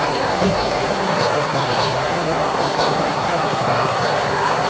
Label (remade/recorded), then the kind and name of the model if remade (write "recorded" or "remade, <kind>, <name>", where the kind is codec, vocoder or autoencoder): remade, codec, SNAC